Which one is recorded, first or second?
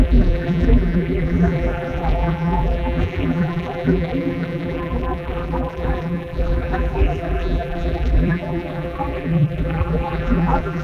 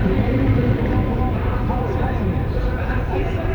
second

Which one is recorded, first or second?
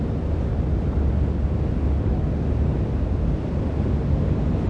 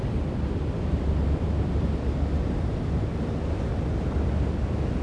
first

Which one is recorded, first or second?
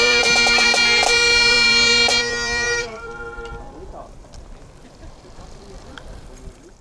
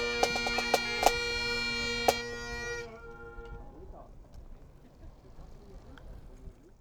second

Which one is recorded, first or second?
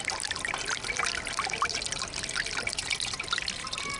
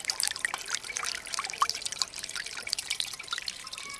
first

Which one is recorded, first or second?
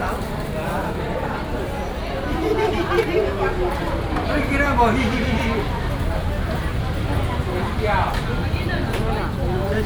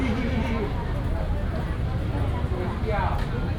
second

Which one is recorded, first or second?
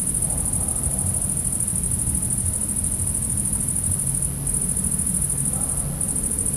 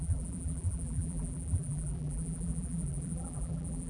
first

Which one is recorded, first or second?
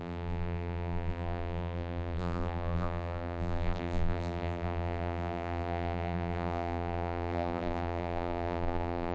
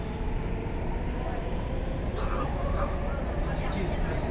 second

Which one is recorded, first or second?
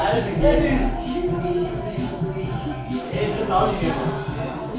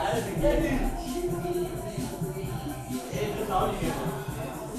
first